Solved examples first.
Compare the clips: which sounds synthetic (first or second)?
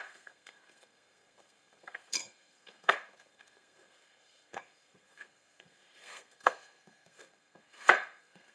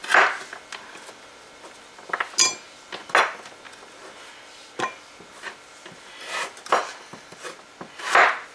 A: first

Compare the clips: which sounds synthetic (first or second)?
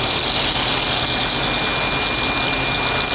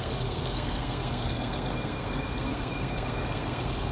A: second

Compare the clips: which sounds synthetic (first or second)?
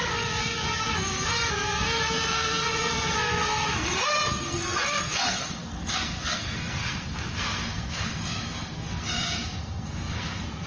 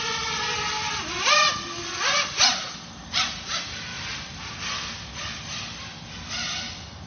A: first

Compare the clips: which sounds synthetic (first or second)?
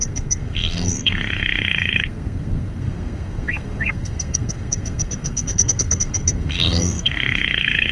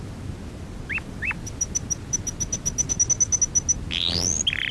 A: first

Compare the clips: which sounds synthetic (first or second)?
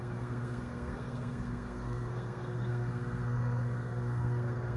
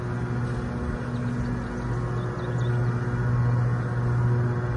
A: first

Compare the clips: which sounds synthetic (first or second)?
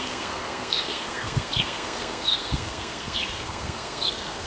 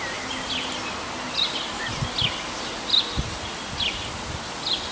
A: first